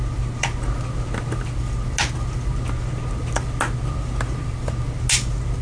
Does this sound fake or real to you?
real